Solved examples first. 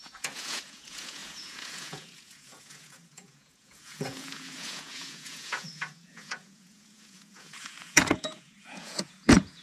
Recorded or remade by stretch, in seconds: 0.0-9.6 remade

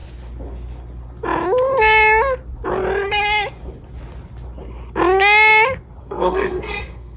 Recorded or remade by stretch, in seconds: 0.0-6.0 recorded; 6.0-7.2 remade